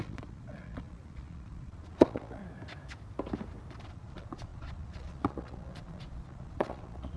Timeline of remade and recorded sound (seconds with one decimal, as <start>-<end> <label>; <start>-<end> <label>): 0.0-2.4 remade; 2.4-3.8 recorded; 3.8-7.2 remade